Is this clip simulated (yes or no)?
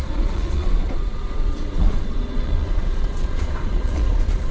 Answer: yes